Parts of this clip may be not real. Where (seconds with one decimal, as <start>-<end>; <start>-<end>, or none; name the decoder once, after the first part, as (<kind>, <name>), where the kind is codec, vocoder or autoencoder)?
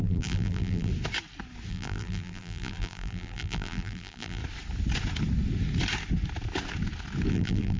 0.0-0.9 (vocoder, BigVGAN v2); 1.7-4.4; 7.3-7.8